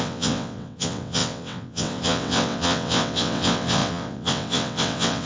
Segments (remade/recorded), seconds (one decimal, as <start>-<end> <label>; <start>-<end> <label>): 0.0-5.3 remade